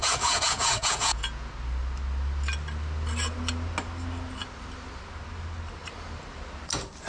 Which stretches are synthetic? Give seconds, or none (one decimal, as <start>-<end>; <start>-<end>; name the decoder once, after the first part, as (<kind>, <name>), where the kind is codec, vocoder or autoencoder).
0.0-1.5 (vocoder, Vocos)